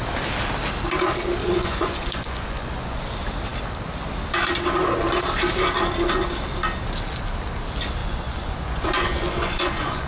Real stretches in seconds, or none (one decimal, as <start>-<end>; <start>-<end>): 0.0-1.4; 3.0-8.0